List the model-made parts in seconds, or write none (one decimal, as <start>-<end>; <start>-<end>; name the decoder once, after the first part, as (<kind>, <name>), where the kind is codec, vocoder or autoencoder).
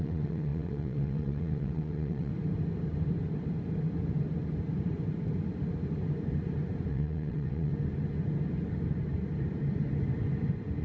0.0-2.3 (vocoder, WaveNeXt); 6.9-7.7